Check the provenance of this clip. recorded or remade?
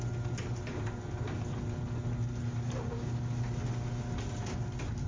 recorded